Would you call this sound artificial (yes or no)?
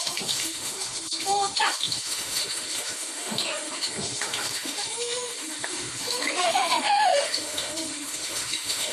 yes